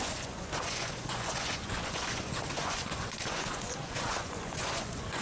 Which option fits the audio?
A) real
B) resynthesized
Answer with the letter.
B